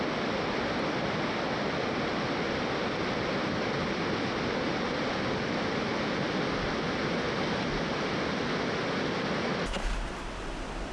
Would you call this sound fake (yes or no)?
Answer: no